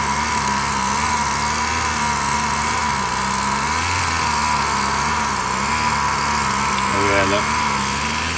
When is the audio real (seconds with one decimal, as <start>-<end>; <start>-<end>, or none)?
0.0-8.4